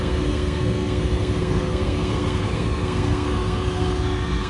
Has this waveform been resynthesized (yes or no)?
yes